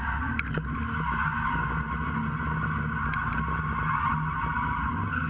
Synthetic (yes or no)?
no